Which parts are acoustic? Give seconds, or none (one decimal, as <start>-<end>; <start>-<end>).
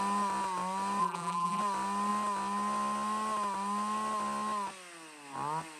0.0-1.0; 1.6-5.8